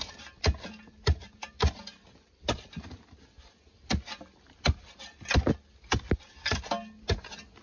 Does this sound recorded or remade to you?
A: recorded